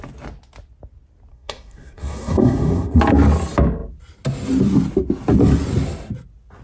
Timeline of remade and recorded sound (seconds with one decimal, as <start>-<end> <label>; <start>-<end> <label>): 0.0-1.3 recorded; 1.3-3.0 remade; 3.0-6.6 recorded